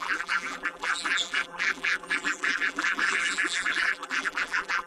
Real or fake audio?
fake